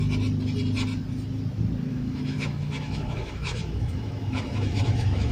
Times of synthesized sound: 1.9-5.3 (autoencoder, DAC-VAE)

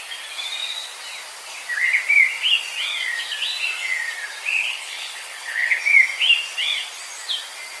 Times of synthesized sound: 4.7-5.8 (codec, HILCodec)